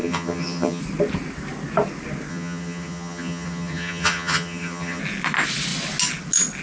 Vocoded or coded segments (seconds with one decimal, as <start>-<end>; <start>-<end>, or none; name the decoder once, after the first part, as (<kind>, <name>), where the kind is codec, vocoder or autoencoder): 0.0-0.8 (vocoder, HiFi-GAN); 2.3-5.0